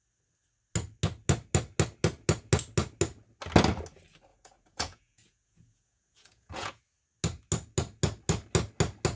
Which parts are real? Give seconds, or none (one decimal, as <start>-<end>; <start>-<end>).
0.0-4.3; 6.8-9.2